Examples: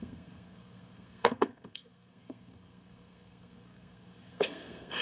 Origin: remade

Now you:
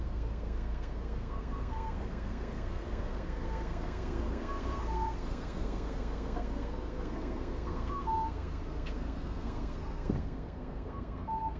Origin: remade